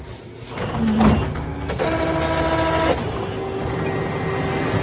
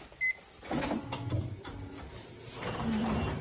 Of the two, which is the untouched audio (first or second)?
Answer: first